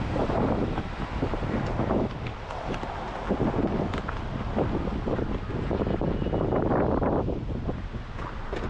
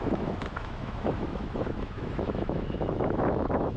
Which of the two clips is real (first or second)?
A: first